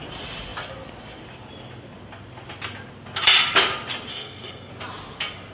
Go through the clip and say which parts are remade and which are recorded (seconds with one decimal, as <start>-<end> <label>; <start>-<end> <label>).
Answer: 0.0-4.1 recorded; 4.1-4.7 remade; 4.7-5.5 recorded